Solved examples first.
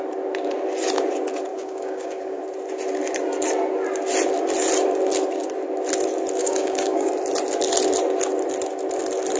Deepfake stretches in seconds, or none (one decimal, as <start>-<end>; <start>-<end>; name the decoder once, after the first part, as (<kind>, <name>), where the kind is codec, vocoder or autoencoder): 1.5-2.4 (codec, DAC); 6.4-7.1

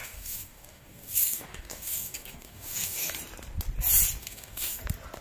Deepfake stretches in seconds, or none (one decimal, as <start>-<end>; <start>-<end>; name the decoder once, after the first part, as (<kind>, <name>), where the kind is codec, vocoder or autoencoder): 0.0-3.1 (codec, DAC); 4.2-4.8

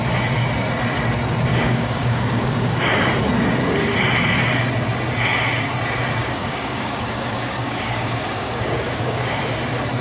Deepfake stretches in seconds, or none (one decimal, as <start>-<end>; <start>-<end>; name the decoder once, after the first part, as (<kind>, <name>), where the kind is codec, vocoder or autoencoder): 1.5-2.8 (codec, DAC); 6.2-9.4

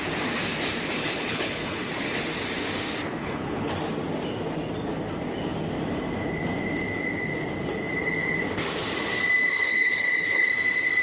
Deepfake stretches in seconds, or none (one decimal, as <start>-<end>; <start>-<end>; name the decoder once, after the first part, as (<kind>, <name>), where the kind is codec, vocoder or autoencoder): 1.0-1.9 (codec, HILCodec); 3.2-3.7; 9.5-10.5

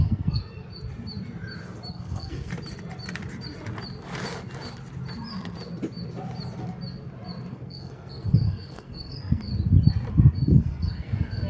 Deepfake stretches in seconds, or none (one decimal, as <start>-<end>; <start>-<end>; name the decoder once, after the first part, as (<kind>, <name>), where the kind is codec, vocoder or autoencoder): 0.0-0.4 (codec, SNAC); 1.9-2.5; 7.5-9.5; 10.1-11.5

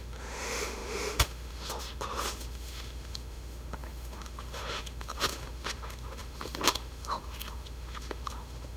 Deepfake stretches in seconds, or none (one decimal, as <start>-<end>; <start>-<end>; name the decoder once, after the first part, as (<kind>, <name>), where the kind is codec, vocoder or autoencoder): 0.0-8.8 (autoencoder, DAC-VAE)